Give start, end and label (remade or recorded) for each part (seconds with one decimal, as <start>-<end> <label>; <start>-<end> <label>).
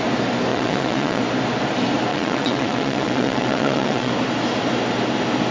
0.0-0.5 recorded; 0.5-1.2 remade; 1.2-2.1 recorded; 2.1-4.1 remade; 4.1-5.5 recorded